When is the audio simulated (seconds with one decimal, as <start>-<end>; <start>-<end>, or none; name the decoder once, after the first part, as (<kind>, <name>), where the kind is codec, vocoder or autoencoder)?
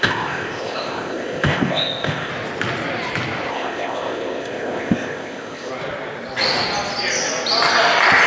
0.0-2.3 (codec, ZipCodec); 3.5-5.7